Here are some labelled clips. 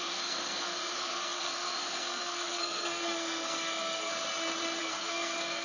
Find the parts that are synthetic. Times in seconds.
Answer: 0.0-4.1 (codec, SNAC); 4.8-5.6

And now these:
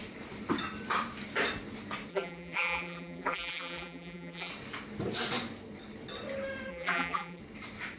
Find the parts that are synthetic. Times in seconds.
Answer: 2.1-4.5 (vocoder, BigVGAN v2); 6.7-7.4

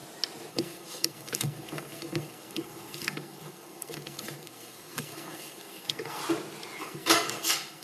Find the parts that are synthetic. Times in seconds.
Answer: 0.5-6.2 (codec, SNAC); 6.8-7.8

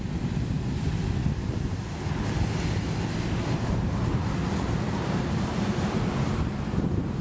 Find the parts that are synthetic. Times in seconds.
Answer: 4.4-6.2 (vocoder, BigVGAN v2)

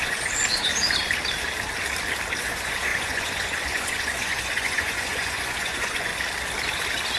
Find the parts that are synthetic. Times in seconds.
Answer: 0.0-0.7 (vocoder, Vocos); 2.4-6.1